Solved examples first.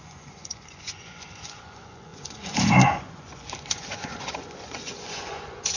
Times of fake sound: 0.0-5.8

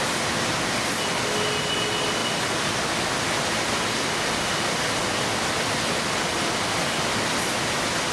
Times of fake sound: none

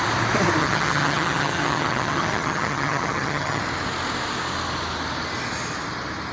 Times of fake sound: 0.6-3.6

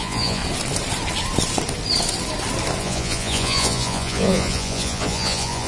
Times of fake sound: 0.0-0.4; 2.8-5.7

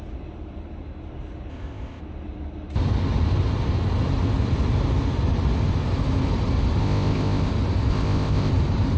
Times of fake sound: 1.5-2.0; 6.8-7.5; 7.9-8.5

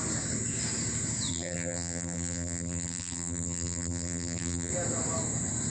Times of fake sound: 1.3-4.7